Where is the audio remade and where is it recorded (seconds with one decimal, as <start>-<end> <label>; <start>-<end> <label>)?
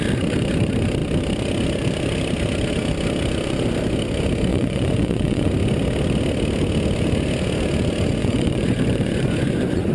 0.0-4.5 recorded; 4.5-5.5 remade; 5.5-8.2 recorded; 8.2-9.9 remade